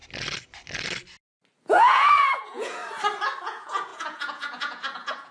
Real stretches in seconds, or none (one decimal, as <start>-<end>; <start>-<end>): 0.0-1.6; 2.8-3.4